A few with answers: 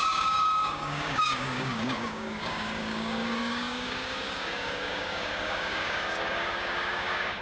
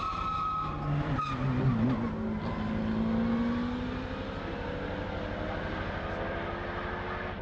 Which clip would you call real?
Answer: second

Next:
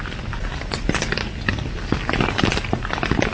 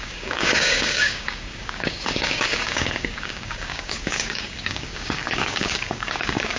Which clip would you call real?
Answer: first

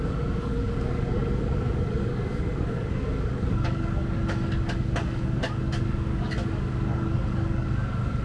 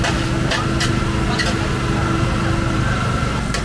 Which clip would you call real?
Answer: second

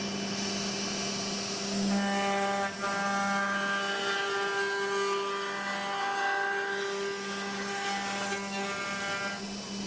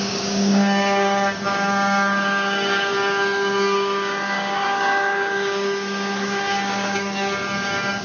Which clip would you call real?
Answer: first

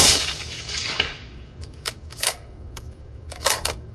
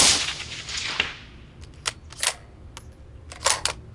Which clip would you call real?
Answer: second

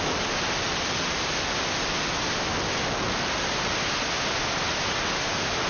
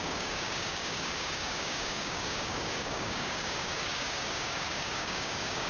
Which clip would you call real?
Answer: first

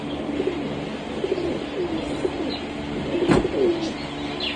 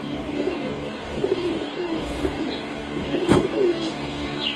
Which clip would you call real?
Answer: first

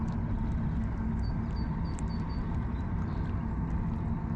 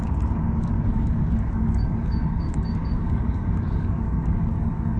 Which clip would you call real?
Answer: first